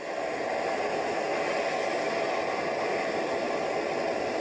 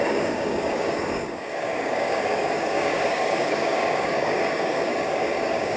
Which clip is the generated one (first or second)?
second